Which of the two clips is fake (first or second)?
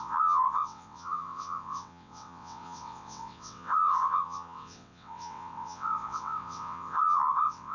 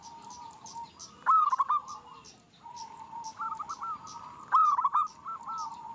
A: first